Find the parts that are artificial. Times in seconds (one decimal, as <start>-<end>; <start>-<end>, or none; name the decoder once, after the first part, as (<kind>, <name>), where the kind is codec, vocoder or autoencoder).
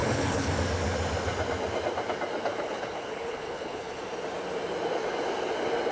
0.0-0.5 (codec, HILCodec); 2.5-4.0